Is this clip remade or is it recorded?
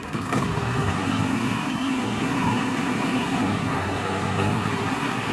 remade